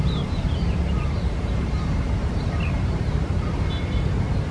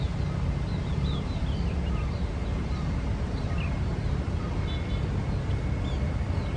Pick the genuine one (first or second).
second